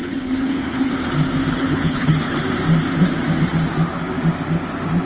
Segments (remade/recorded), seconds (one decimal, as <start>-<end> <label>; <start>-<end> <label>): 0.0-0.9 remade; 0.9-1.5 recorded; 1.5-2.4 remade; 2.4-5.0 recorded